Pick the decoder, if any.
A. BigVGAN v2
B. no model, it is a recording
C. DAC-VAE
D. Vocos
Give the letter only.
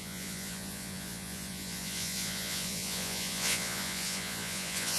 D